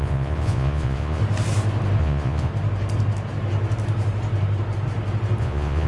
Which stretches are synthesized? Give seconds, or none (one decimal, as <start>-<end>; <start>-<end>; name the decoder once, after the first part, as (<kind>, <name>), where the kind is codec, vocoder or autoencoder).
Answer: 0.0-1.2 (vocoder, Vocos); 2.0-2.5; 5.4-5.9